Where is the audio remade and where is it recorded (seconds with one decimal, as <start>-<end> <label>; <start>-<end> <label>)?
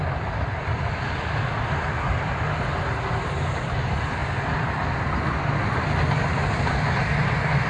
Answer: 0.0-7.7 recorded